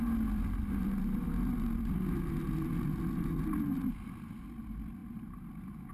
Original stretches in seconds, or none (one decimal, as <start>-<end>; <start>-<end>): 0.0-5.0

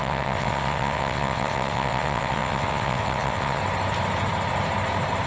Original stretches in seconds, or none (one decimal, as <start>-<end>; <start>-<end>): 3.6-5.3